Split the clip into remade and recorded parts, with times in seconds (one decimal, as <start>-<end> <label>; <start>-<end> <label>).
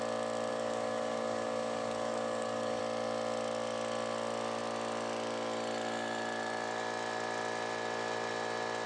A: 0.0-0.5 recorded; 0.5-2.8 remade; 2.8-8.9 recorded